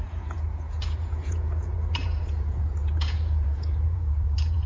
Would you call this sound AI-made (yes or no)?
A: yes